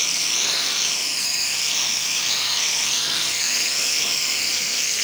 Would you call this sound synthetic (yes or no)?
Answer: yes